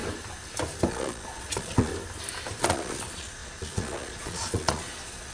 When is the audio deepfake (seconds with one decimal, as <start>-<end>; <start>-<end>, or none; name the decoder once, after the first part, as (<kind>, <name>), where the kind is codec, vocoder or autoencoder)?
0.9-1.9 (vocoder, Vocos); 2.6-5.3

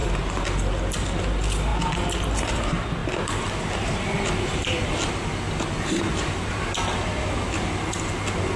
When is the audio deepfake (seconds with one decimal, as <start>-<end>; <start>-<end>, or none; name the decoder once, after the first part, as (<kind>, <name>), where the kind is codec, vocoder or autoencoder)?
none

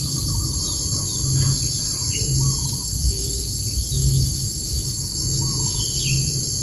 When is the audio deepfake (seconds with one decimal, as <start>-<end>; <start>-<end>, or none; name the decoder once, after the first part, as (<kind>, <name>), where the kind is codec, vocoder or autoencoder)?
3.0-3.5 (autoencoder, DAC-VAE); 4.0-5.8

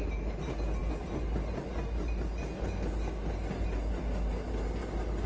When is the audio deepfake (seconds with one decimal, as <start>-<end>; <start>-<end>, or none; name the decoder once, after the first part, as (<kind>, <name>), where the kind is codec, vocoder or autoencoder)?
none

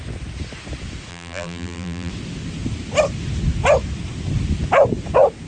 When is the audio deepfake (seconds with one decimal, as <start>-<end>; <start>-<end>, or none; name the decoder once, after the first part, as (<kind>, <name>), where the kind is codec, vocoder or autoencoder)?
1.1-2.1 (vocoder, BigVGAN v2)

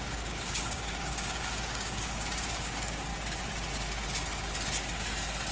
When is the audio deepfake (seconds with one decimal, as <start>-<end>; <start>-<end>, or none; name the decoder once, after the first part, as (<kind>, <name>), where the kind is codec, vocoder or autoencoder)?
0.0-3.1 (codec, DAC)